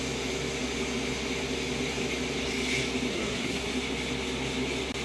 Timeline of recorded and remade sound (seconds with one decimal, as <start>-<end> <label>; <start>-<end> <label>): 0.0-3.1 recorded; 3.1-3.7 remade; 3.7-5.0 recorded